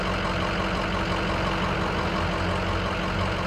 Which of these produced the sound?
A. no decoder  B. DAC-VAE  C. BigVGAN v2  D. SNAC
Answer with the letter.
A